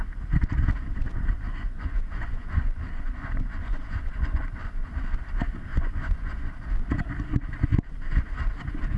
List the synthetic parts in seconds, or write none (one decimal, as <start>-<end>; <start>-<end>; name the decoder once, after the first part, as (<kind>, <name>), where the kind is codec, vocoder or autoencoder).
1.5-4.9 (vocoder, Vocos); 5.7-6.5